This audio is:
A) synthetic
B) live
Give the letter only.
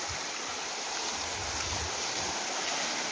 B